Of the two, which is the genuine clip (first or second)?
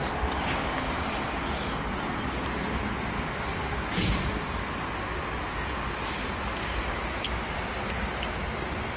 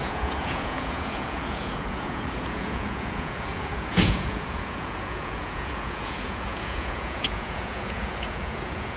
first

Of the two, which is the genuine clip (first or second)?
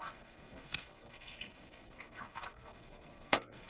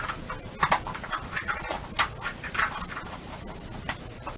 second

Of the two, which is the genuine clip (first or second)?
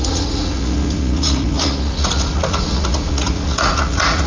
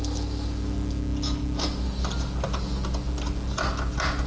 second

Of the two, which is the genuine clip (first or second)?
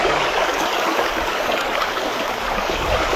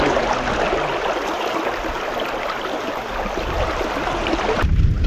second